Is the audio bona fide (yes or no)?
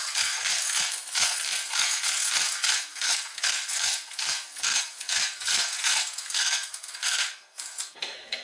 no